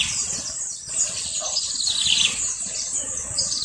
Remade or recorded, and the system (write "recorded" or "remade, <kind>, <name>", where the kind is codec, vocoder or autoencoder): recorded